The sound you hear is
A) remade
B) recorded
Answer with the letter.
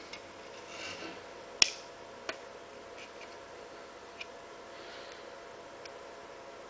B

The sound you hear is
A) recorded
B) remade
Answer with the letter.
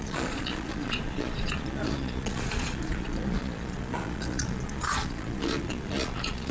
B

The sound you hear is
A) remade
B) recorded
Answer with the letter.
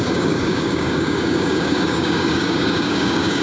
A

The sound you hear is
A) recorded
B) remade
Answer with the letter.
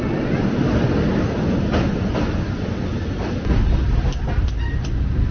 A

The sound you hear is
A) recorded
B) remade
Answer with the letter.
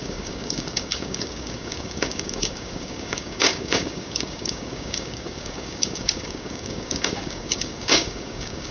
B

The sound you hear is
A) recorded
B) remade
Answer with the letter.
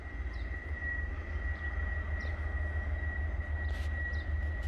A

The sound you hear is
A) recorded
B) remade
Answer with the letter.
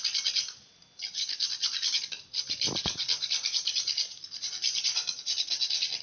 A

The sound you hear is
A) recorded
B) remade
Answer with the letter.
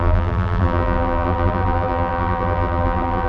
B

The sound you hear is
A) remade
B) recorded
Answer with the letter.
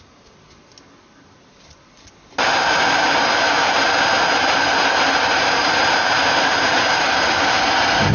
B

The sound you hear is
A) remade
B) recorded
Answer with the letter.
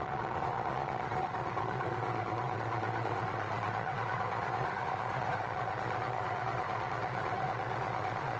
A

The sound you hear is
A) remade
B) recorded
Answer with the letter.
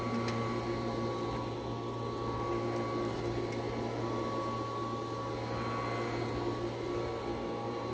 B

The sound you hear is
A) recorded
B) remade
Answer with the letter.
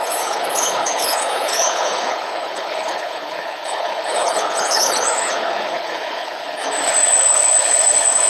B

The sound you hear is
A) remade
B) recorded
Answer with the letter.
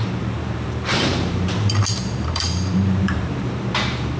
A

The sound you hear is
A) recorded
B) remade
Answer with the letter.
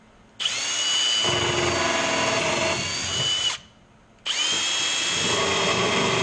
A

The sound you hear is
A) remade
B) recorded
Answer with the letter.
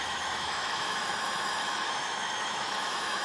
A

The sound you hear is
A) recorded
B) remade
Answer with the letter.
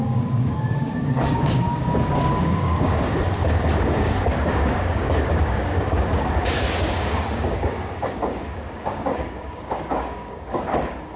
B